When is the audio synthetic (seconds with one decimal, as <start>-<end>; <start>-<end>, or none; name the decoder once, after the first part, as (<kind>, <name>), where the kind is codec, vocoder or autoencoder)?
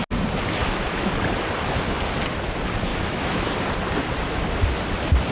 0.6-1.1 (autoencoder, DAC-VAE); 2.9-3.5